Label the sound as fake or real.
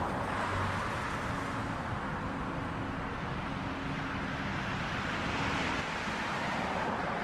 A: real